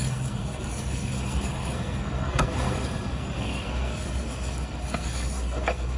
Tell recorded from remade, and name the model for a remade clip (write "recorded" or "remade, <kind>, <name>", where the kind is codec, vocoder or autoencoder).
remade, codec, SNAC